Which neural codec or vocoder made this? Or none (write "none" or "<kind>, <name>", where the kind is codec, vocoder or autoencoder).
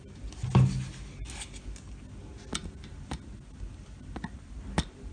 none